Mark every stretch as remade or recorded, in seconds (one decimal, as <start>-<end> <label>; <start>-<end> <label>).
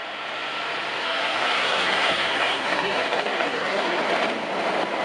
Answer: 0.0-1.0 recorded; 1.0-4.0 remade; 4.0-5.0 recorded